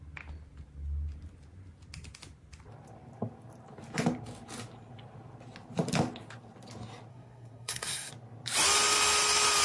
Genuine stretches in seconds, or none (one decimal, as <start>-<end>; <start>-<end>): 0.0-7.1; 8.1-9.6